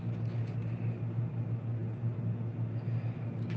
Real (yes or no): yes